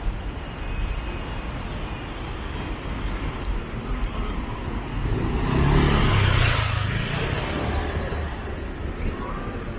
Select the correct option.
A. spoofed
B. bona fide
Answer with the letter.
B